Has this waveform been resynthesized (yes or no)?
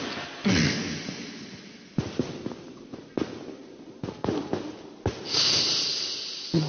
no